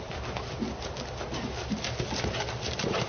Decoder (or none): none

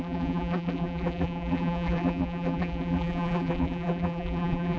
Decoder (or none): vocoder, BigVGAN v2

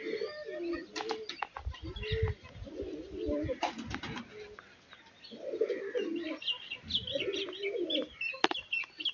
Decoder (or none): none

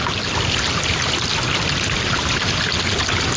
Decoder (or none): none